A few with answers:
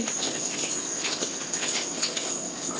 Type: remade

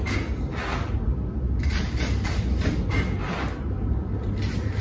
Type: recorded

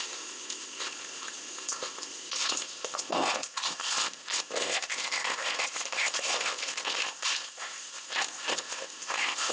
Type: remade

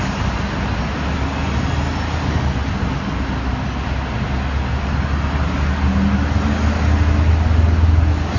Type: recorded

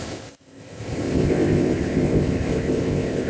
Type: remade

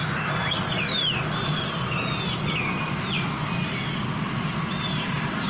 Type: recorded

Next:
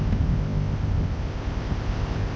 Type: remade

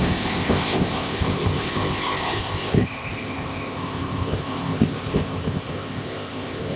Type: remade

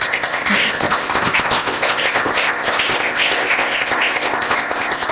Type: remade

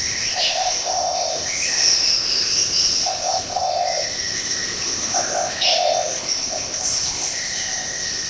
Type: remade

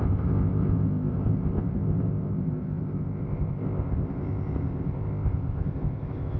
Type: remade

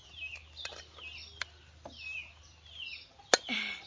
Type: recorded